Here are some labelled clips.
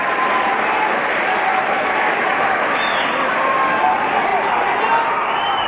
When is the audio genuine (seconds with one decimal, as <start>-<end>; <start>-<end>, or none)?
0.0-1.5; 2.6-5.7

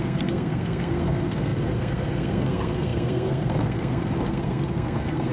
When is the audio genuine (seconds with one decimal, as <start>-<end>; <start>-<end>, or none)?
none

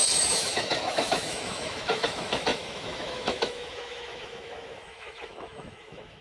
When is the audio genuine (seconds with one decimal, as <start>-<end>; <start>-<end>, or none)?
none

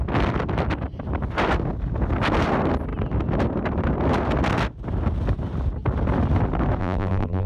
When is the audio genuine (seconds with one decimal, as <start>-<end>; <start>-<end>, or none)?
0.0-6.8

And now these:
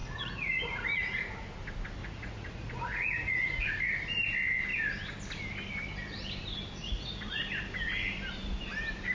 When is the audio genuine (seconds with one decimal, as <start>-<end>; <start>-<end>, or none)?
1.2-2.0; 3.9-6.8; 7.4-9.1